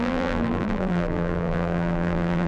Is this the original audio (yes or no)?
no